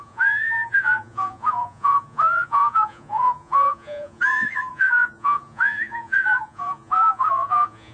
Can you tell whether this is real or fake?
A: fake